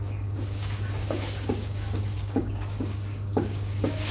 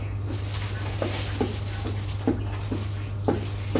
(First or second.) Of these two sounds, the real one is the second